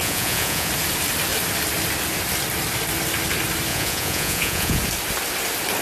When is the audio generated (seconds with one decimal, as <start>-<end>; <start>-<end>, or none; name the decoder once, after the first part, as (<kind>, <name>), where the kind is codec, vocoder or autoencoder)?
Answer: 0.0-0.7 (vocoder, Vocos); 3.7-4.8

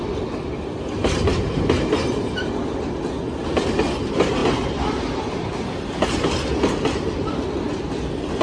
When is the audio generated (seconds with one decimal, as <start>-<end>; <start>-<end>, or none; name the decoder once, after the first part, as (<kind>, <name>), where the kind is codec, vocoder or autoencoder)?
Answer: none

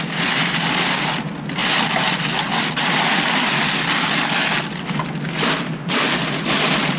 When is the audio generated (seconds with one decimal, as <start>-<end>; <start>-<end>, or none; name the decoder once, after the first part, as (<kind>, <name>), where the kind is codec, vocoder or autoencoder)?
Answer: none

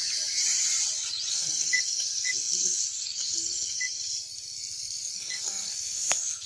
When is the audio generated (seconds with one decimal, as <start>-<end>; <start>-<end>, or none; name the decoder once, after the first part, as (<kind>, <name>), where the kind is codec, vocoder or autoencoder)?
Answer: 1.3-6.5 (codec, SNAC)